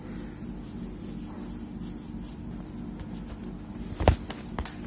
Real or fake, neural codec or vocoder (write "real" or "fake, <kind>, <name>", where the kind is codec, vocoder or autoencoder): real